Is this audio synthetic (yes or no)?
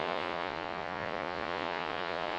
yes